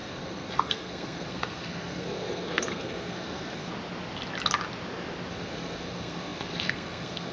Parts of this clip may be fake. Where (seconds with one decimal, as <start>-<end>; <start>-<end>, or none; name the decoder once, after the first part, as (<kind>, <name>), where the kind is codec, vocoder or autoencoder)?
0.0-3.7 (codec, SNAC); 5.3-7.3